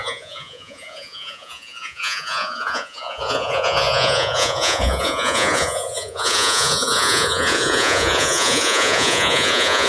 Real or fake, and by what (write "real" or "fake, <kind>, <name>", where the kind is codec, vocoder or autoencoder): fake, vocoder, Vocos